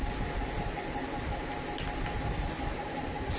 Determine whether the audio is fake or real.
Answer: real